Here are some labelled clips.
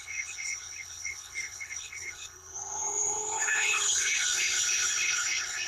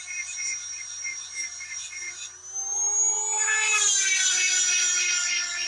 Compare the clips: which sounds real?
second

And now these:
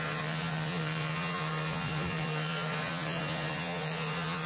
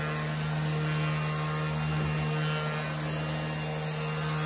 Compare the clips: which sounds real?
second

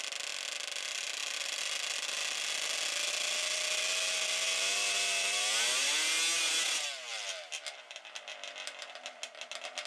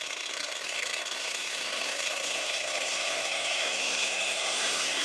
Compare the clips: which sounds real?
first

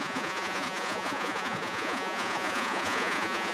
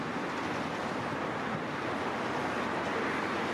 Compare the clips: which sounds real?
second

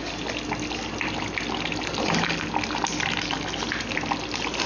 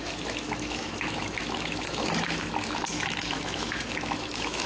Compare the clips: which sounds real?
first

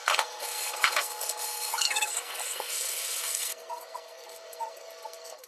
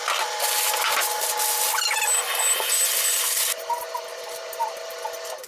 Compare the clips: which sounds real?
second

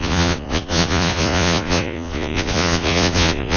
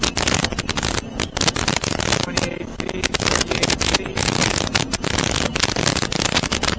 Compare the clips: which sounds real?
second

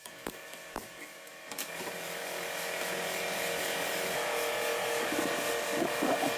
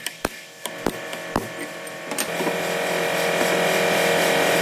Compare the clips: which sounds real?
second